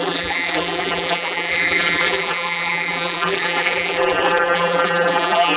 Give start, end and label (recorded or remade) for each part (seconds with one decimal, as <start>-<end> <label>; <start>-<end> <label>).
0.0-5.6 remade